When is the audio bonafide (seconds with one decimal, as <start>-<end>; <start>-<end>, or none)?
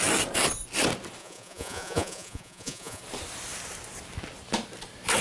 0.0-1.2; 3.0-5.2